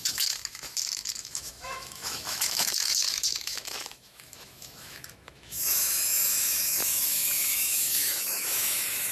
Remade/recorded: remade